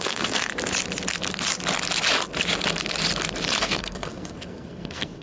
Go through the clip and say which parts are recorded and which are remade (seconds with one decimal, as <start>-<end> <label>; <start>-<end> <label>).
0.0-0.5 remade; 0.5-3.6 recorded; 3.6-5.2 remade